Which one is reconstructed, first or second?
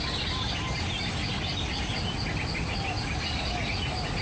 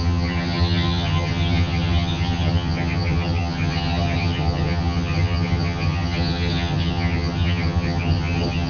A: second